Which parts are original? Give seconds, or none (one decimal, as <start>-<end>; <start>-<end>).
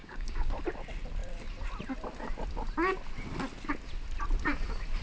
0.5-5.0